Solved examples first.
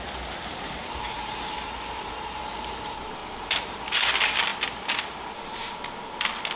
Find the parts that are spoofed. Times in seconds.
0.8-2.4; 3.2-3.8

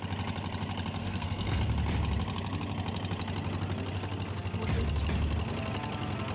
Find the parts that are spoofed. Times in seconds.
1.0-1.6

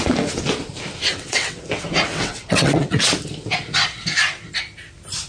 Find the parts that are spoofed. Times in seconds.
1.1-1.6; 2.1-3.1

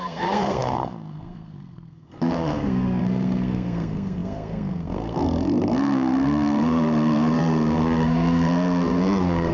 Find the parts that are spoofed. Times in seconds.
0.0-9.5

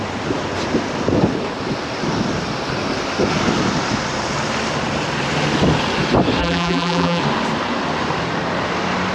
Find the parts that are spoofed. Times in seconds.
6.4-7.2

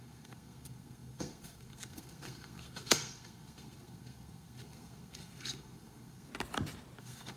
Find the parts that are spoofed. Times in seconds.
0.0-6.3; 7.0-7.4

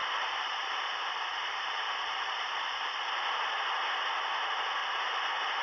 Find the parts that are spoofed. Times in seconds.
0.0-3.4; 4.8-5.6

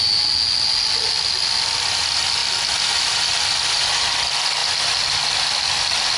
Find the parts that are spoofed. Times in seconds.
none